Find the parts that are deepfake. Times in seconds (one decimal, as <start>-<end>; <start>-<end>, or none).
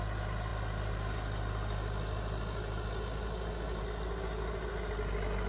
none